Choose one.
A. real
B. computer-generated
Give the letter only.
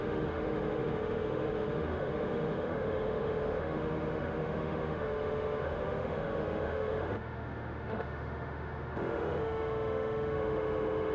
B